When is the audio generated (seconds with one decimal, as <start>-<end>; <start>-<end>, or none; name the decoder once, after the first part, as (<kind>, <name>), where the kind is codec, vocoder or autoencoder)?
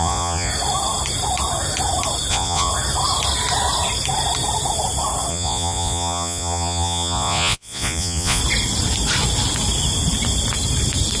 0.0-0.5 (vocoder, Vocos); 2.3-2.7; 5.3-8.4